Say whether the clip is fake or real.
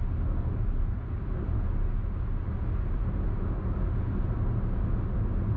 real